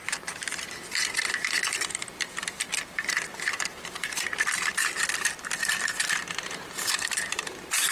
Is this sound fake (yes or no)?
yes